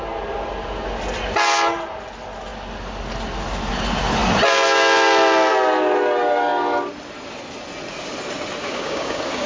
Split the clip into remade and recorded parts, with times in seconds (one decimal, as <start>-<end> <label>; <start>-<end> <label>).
0.0-8.6 recorded; 8.6-9.5 remade